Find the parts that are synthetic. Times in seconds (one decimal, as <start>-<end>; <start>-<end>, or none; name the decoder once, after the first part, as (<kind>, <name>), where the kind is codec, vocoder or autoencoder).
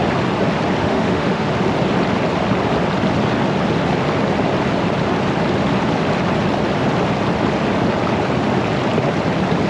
0.8-1.5 (autoencoder, DAC-VAE)